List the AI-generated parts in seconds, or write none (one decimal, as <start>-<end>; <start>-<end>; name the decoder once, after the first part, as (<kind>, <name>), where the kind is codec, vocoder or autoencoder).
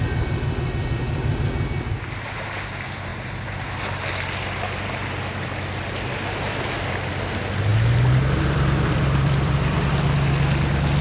7.7-9.9 (vocoder, BigVGAN v2)